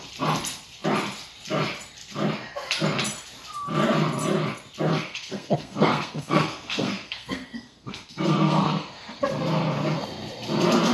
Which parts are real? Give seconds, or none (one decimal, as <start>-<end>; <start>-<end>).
0.0-4.9; 9.3-10.9